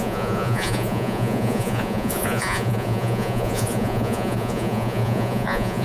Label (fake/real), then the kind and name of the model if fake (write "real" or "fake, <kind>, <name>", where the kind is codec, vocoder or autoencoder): fake, vocoder, Vocos